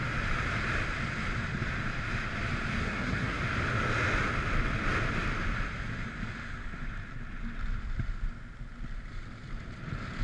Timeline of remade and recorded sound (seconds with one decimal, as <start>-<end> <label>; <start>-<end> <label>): 0.0-2.8 recorded; 2.8-3.4 remade; 3.4-10.2 recorded